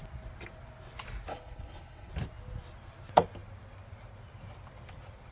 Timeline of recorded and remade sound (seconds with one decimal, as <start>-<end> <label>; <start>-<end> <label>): 0.0-1.3 recorded; 1.3-2.1 remade; 2.1-5.3 recorded